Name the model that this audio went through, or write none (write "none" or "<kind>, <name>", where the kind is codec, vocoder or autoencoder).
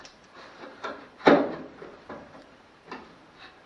vocoder, BigVGAN v2